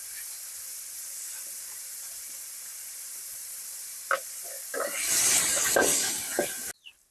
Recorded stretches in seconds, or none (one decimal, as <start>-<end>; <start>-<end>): 0.0-0.7; 3.5-4.7; 5.7-7.1